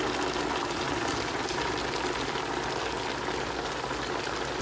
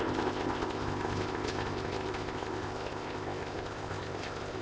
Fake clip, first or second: second